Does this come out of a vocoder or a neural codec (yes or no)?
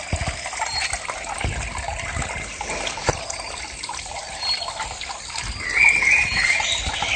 no